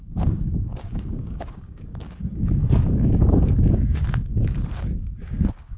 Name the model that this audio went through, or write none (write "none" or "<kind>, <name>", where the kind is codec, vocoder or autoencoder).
codec, DAC